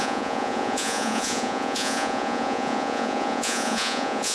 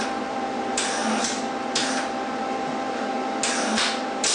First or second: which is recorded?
second